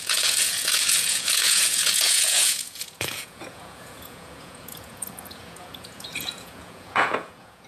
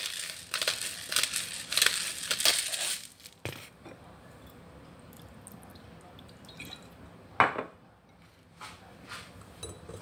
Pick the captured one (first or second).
second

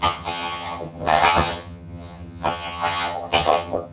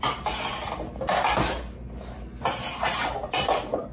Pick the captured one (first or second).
second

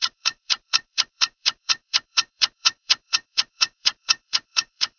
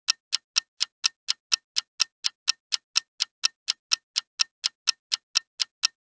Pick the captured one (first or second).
second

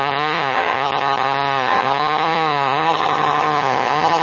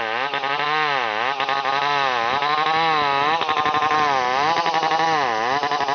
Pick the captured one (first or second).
second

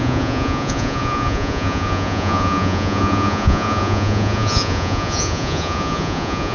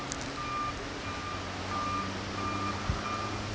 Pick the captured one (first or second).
second